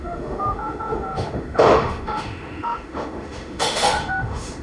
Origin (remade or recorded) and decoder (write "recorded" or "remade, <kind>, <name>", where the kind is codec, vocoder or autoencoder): remade, autoencoder, DAC-VAE